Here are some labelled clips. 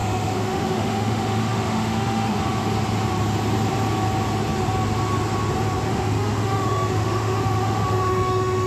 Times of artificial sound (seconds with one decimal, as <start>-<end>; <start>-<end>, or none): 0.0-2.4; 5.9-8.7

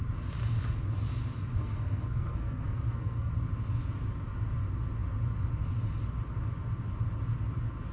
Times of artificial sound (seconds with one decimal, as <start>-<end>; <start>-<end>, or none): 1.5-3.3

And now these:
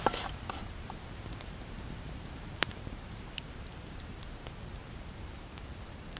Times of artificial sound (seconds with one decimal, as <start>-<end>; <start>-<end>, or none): 0.6-4.3; 4.8-6.2

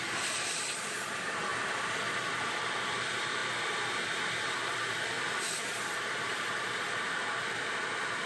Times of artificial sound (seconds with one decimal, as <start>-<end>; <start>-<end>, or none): 0.0-1.5; 2.9-8.3

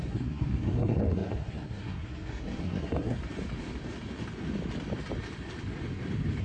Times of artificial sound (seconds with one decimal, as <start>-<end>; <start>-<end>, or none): 0.0-3.2

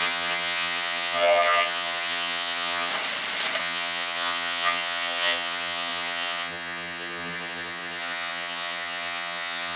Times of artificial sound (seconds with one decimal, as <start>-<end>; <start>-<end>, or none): 0.0-2.9; 3.6-9.8

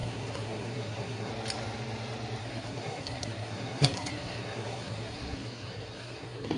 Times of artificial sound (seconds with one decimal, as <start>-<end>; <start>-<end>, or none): 0.0-1.3; 2.4-6.6